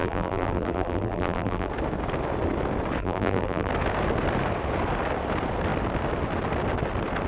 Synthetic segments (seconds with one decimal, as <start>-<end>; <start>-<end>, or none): 0.0-1.7; 3.0-3.7